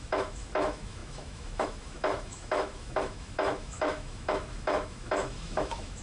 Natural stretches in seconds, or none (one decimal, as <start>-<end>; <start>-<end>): none